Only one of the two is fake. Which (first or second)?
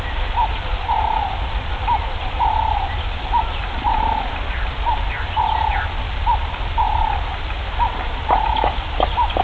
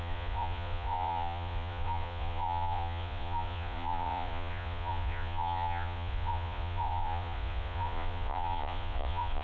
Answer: second